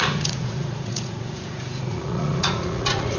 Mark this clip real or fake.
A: fake